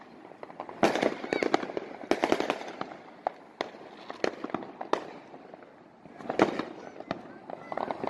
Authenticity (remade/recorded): recorded